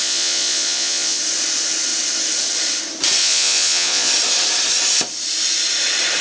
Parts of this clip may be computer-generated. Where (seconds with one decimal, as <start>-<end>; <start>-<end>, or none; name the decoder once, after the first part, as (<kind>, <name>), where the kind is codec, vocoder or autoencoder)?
0.0-1.2 (vocoder, Vocos); 3.2-4.1